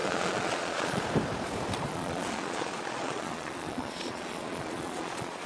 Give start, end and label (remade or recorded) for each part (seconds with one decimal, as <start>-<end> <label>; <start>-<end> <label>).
0.0-1.0 remade; 1.0-1.9 recorded; 1.9-5.5 remade